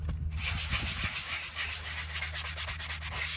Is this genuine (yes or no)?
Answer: yes